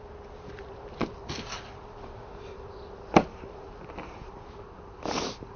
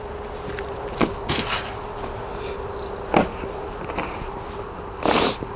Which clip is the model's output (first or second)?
first